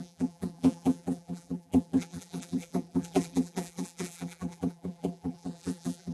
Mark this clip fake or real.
fake